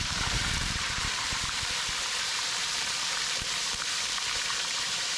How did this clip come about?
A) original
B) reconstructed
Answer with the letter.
B